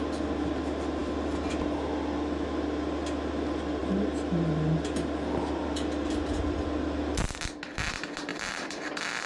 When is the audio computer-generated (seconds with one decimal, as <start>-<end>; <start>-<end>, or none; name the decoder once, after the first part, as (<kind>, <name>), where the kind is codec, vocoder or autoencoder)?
1.0-1.5 (vocoder, BigVGAN v2); 8.3-9.3